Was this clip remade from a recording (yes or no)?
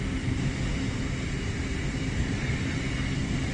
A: no